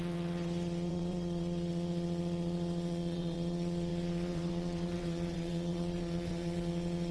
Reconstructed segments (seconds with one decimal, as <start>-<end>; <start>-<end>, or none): 0.0-7.1